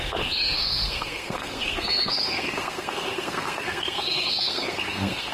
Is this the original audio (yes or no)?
no